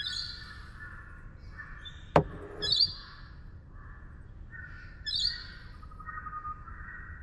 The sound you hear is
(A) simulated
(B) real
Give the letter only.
B